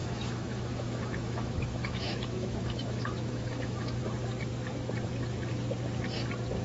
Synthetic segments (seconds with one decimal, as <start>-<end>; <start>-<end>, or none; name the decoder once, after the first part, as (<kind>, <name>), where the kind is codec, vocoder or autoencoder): 0.0-4.0 (autoencoder, DAC-VAE)